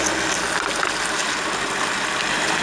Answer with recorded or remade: recorded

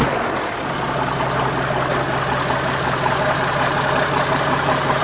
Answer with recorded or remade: recorded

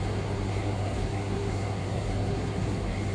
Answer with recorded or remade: remade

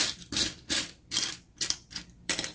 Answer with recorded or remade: remade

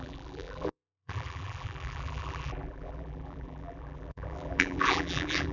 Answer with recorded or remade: remade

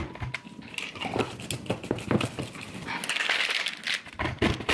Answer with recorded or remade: recorded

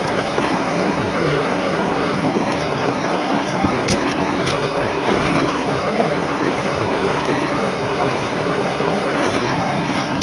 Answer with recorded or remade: remade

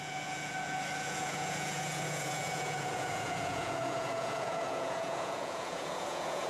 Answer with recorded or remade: remade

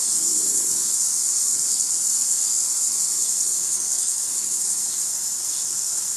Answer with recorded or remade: remade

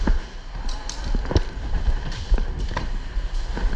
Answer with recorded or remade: recorded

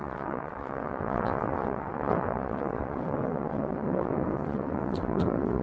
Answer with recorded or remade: remade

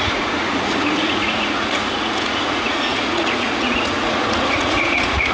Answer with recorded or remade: remade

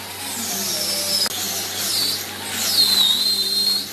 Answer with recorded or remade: recorded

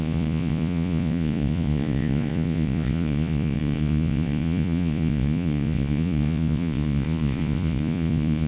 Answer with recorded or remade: remade